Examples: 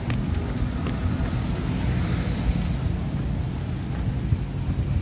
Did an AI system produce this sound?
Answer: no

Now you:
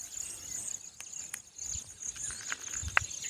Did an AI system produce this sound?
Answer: no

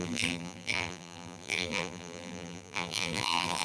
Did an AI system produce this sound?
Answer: yes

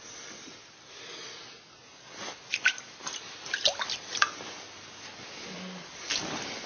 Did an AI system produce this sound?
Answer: no